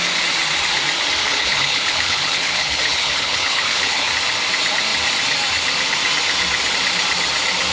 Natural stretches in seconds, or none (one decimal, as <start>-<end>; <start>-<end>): 0.0-1.2; 4.1-7.7